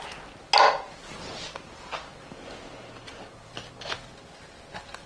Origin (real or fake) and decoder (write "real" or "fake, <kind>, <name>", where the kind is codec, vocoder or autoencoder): real